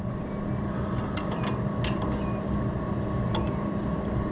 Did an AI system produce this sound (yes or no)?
no